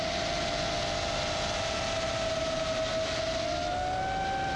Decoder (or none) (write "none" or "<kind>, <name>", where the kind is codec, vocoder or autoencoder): none